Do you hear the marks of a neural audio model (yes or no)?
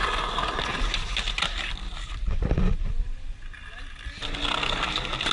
no